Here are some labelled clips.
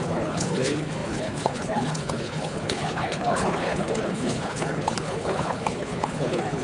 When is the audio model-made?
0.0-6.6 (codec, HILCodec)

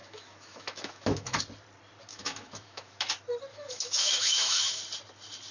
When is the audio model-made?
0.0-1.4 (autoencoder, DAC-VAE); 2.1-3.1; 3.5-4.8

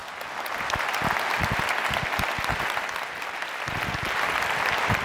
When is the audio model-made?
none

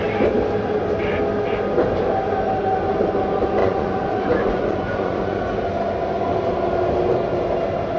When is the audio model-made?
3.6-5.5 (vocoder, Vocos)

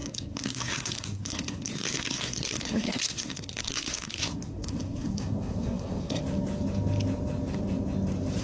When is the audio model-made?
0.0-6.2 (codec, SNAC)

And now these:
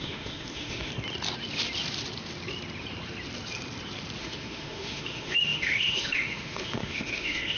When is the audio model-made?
0.0-0.9 (autoencoder, DAC-VAE); 4.2-7.6

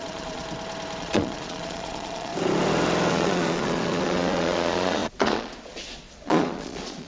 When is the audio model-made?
0.0-0.4 (vocoder, Vocos); 1.0-2.3; 3.1-7.1